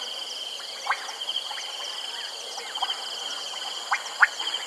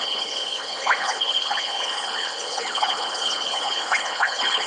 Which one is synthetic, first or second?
second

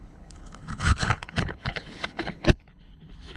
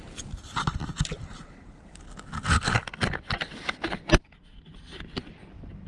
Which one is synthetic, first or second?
first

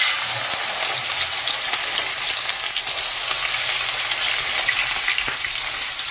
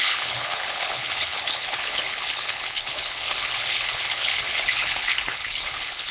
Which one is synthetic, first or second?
second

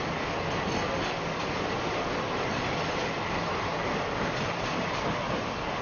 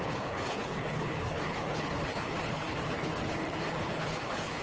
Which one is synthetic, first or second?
second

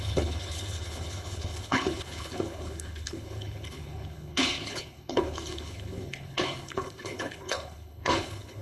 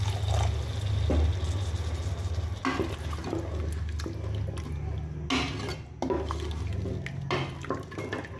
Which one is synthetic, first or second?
first